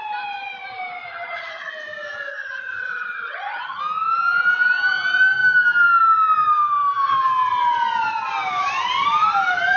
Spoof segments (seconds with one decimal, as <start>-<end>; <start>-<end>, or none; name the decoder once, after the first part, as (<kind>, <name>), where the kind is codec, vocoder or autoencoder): 1.1-1.7 (vocoder, HiFi-GAN); 2.3-3.8